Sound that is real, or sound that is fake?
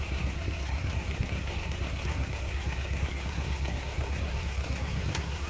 fake